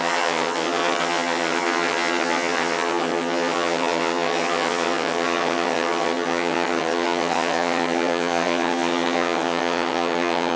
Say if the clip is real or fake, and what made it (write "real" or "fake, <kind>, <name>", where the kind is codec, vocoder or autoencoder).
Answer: fake, vocoder, HiFi-GAN